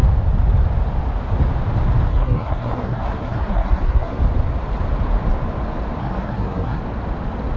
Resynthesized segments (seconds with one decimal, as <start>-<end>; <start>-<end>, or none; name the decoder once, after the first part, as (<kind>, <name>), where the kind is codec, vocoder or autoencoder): 2.1-4.2 (codec, SNAC); 6.0-6.8